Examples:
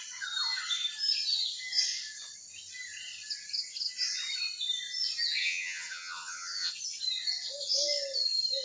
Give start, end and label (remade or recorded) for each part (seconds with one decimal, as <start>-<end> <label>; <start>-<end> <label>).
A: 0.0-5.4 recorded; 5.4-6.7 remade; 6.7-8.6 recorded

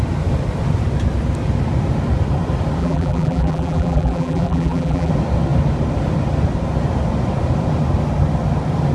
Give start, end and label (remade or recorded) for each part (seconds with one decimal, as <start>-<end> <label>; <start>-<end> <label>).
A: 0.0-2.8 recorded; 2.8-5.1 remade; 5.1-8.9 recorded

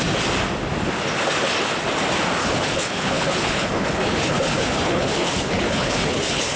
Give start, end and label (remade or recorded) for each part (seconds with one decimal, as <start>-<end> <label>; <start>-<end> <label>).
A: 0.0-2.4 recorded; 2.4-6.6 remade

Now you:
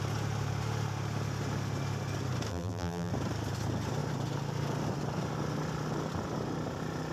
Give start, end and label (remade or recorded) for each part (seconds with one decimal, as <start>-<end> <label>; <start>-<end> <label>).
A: 0.0-2.5 recorded; 2.5-3.1 remade; 3.1-7.1 recorded